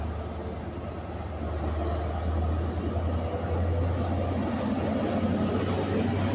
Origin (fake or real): real